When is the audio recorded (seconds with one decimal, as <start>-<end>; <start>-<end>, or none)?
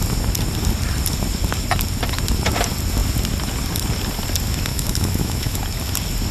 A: 0.0-4.7; 5.6-6.3